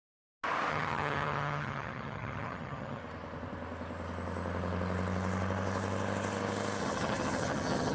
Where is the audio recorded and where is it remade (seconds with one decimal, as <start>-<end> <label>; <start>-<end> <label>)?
0.0-0.7 recorded; 0.7-3.0 remade; 3.0-6.8 recorded; 6.8-7.9 remade